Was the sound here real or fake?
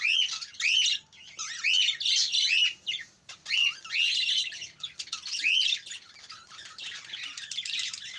real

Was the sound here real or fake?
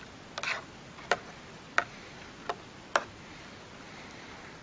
real